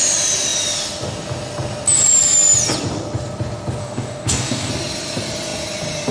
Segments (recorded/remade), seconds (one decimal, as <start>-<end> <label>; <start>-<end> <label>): 0.0-3.8 recorded; 3.8-4.7 remade; 4.7-6.1 recorded